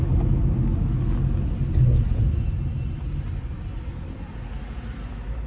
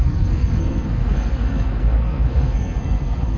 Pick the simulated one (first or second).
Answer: second